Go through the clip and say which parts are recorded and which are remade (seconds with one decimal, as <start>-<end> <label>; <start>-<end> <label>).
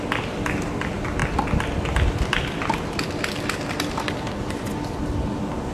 0.0-5.7 recorded